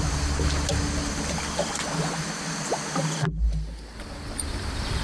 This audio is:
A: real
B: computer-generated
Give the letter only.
A